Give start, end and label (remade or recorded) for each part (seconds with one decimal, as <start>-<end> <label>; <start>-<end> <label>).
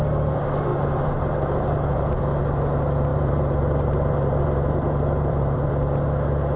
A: 0.0-0.7 recorded; 0.7-2.2 remade; 2.2-3.1 recorded; 3.1-5.7 remade; 5.7-6.6 recorded